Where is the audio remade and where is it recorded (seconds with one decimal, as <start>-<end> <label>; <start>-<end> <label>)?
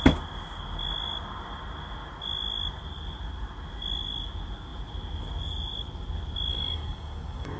0.0-6.5 recorded; 6.5-7.6 remade